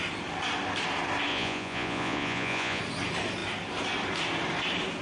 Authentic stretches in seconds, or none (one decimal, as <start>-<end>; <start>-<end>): 0.0-1.3; 2.8-5.0